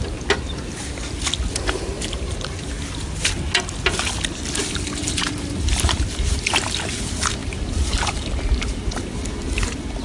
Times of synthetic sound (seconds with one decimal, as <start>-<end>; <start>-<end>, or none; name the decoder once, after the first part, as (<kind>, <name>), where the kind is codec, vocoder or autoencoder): 5.0-6.3 (vocoder, BigVGAN v2); 7.4-9.1